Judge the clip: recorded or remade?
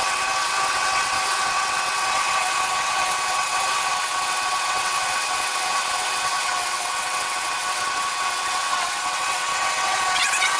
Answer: remade